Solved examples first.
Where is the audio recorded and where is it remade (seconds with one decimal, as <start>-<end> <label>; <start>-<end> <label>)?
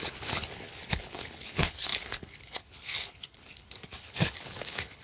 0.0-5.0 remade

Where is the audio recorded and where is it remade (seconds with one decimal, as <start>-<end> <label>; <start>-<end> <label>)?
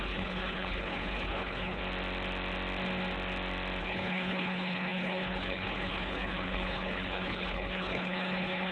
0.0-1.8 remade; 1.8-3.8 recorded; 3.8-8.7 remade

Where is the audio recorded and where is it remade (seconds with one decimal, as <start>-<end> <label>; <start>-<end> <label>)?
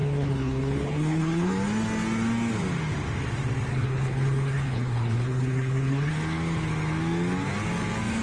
0.0-1.5 remade; 1.5-3.7 recorded; 3.7-6.1 remade; 6.1-8.2 recorded